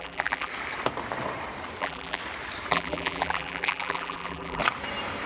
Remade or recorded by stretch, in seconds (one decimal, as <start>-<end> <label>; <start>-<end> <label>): 0.0-0.5 remade; 0.5-1.8 recorded; 1.8-2.2 remade; 2.2-2.7 recorded; 2.7-4.6 remade; 4.6-5.3 recorded